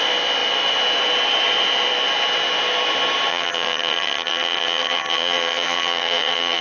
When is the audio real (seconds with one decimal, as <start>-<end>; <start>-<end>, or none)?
0.0-3.3